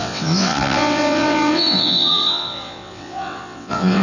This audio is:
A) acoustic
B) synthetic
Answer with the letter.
B